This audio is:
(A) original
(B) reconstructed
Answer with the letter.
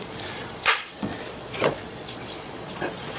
B